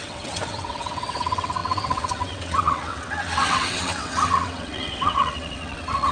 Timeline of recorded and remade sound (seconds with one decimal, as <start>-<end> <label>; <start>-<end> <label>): 0.0-6.1 remade